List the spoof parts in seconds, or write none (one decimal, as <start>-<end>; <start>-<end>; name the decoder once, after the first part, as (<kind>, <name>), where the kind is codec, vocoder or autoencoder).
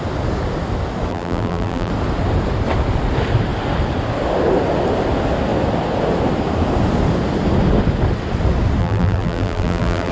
1.1-1.9 (vocoder, BigVGAN v2); 8.8-10.1